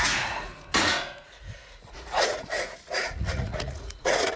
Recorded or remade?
remade